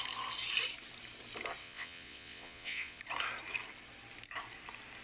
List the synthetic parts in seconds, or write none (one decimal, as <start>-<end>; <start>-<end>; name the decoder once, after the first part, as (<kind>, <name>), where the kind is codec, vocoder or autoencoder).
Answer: 1.6-3.0 (vocoder, WaveNeXt)